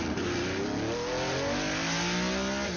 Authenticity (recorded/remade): recorded